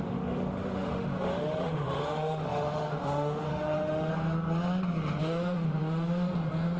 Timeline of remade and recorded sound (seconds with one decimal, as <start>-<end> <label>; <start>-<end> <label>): 0.0-4.1 remade; 4.1-5.2 recorded; 5.2-6.3 remade; 6.3-6.8 recorded